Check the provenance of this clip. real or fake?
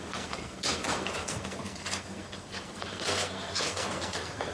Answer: fake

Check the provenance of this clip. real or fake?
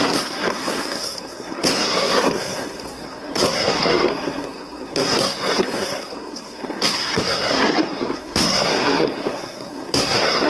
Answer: fake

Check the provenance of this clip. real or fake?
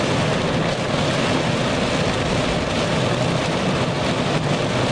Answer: real